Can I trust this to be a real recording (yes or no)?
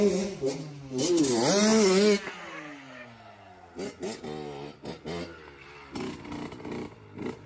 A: yes